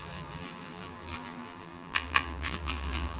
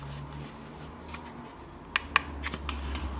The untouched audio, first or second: second